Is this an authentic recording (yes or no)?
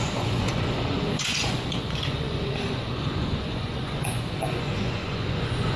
no